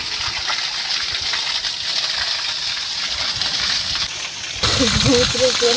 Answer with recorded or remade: recorded